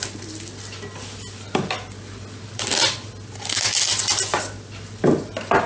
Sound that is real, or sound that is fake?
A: real